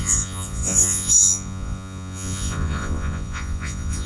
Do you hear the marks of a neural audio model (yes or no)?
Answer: yes